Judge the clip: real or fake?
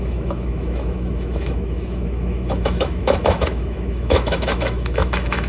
fake